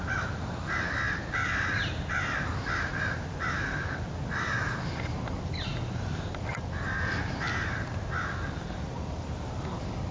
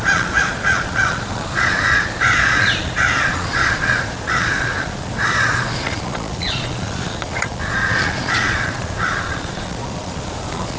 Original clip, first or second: first